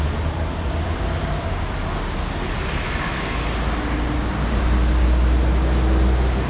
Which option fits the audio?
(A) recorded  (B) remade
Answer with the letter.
A